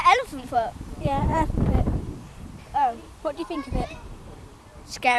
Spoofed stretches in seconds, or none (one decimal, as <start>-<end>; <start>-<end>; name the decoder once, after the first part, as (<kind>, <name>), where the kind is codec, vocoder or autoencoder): 0.0-5.2 (vocoder, BigVGAN v2)